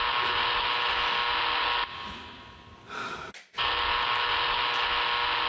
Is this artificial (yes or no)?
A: no